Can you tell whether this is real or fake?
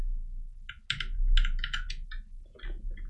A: real